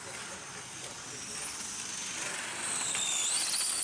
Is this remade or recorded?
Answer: recorded